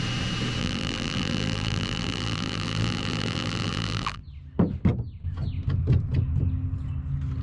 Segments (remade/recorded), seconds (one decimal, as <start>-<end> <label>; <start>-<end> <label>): 0.0-0.6 recorded; 0.6-4.2 remade; 4.2-7.4 recorded